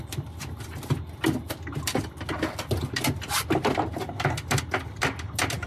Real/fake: real